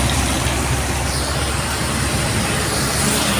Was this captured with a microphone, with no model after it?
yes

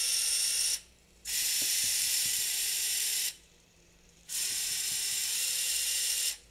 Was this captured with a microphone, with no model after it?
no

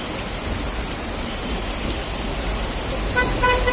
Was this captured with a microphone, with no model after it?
yes